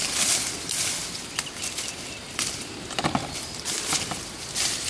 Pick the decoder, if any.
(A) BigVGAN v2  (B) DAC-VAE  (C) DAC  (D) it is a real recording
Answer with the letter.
D